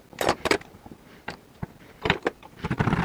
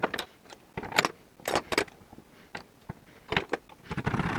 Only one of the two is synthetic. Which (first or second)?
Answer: first